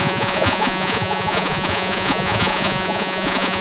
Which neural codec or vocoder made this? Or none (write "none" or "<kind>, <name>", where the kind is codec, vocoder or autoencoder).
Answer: vocoder, Vocos